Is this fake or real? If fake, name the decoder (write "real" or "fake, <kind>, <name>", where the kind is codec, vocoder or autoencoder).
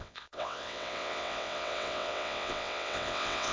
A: fake, vocoder, WaveNeXt